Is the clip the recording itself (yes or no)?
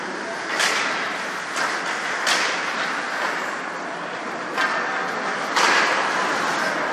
yes